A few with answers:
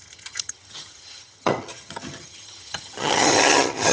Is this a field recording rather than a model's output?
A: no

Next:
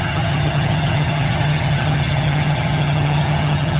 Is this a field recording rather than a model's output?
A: no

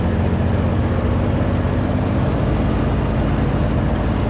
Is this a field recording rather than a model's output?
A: yes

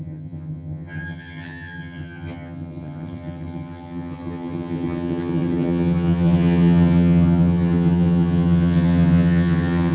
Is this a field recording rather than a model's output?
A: no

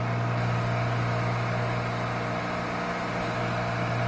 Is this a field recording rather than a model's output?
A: yes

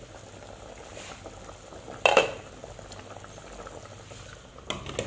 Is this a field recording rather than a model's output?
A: yes